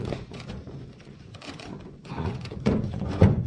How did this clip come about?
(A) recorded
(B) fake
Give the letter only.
B